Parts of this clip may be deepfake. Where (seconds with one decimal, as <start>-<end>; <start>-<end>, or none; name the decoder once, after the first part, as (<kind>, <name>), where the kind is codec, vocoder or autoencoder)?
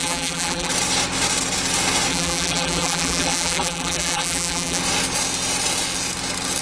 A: 0.0-0.7 (vocoder, BigVGAN v2); 2.1-4.8